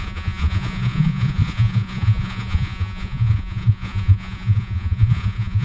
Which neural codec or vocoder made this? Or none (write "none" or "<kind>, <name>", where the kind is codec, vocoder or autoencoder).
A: vocoder, Vocos